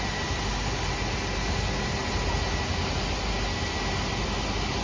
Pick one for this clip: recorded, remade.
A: recorded